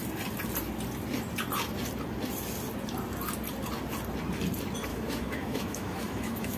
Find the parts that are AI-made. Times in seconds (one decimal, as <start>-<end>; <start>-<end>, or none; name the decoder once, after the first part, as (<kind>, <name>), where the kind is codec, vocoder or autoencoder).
4.9-6.6 (autoencoder, DAC-VAE)